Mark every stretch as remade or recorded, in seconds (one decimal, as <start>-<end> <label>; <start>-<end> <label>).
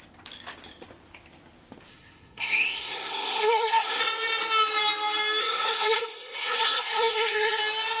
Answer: 0.0-1.9 recorded; 1.9-4.0 remade; 4.0-5.4 recorded; 5.4-7.6 remade; 7.6-8.0 recorded